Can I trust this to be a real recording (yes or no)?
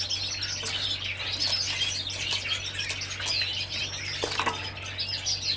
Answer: yes